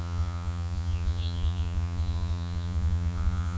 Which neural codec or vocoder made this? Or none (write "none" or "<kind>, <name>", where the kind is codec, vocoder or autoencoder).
vocoder, Vocos